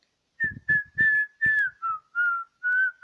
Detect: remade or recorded recorded